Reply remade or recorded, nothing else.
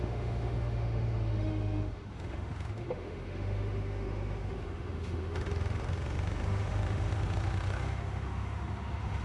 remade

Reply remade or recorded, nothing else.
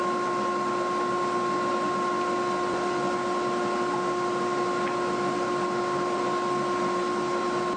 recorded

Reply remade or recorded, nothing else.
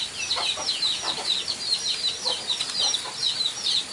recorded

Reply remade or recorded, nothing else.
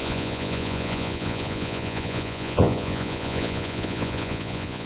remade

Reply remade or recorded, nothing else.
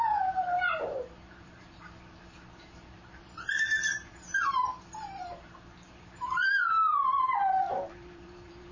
remade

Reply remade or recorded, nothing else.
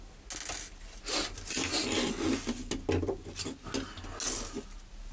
recorded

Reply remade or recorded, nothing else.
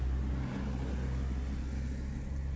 recorded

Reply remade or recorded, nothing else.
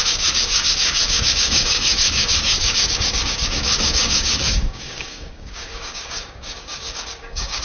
remade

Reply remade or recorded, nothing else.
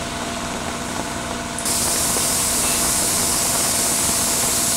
recorded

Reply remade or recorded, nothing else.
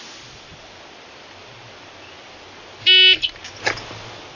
recorded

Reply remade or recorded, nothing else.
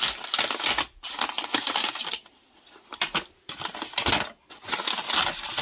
recorded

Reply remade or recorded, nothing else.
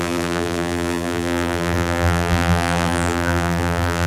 remade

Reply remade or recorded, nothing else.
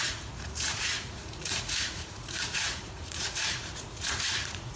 remade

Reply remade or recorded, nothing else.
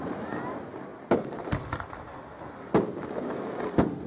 recorded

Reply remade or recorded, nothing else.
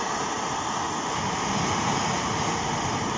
recorded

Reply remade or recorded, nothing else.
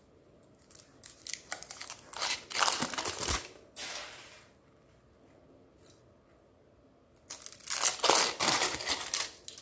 recorded